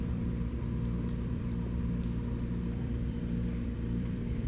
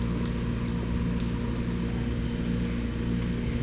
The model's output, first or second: first